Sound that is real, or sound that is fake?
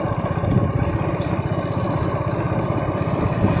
real